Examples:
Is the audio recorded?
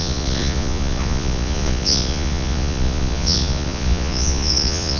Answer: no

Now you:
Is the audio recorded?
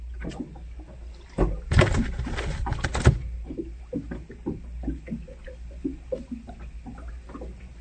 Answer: yes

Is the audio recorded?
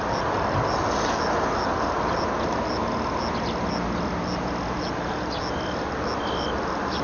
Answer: yes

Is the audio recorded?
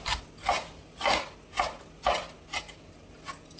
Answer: yes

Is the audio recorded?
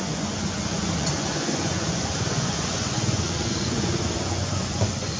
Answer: no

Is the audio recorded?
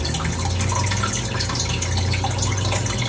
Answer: yes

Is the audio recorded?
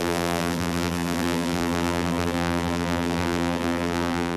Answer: no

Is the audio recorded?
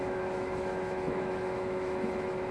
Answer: no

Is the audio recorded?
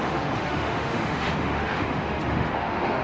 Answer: no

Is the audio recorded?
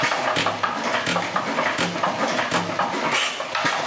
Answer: yes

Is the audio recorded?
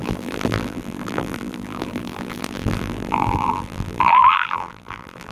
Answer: no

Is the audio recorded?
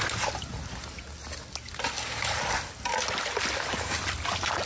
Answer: yes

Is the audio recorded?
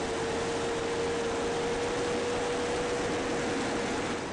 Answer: yes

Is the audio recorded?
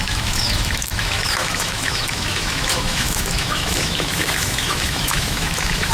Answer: no